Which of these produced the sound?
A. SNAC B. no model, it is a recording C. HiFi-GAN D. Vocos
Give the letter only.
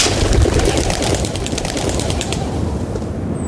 B